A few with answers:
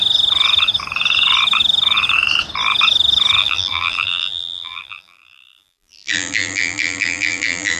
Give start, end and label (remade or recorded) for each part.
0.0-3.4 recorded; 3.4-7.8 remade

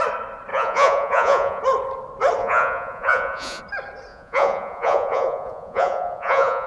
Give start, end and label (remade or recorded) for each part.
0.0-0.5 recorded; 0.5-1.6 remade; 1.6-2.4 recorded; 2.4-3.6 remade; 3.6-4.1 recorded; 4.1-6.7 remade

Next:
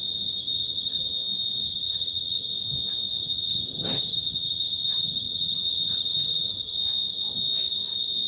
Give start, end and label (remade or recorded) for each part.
0.0-0.4 recorded; 0.4-1.0 remade; 1.0-1.7 recorded; 1.7-2.5 remade; 2.5-3.2 recorded; 3.2-6.8 remade; 6.8-8.3 recorded